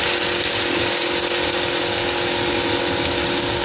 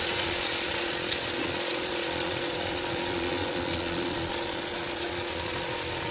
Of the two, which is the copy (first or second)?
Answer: second